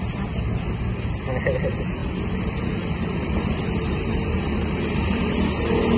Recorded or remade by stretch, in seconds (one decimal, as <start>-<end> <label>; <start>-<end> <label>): 0.0-2.0 recorded; 2.0-5.4 remade; 5.4-6.0 recorded